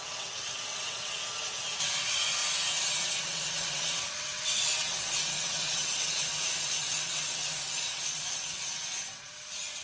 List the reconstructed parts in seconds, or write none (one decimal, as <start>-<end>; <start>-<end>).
0.0-1.2; 2.0-2.4; 2.9-9.8